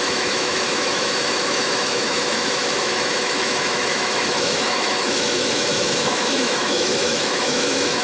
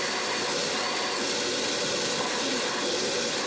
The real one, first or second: second